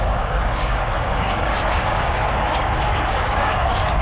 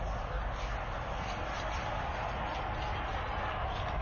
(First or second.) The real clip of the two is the second